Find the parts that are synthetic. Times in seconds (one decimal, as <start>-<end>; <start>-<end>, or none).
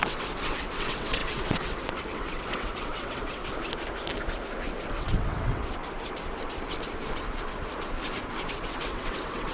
0.0-3.4; 4.9-5.6; 8.6-9.5